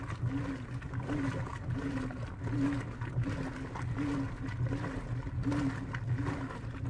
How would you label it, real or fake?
real